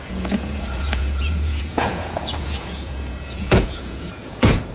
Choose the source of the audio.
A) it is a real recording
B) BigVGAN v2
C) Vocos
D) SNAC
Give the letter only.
C